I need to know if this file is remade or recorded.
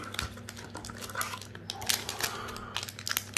recorded